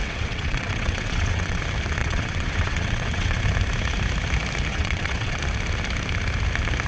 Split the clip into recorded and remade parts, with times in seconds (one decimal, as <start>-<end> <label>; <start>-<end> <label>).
0.0-1.6 remade; 1.6-2.0 recorded; 2.0-3.4 remade; 3.4-4.7 recorded; 4.7-5.4 remade; 5.4-6.9 recorded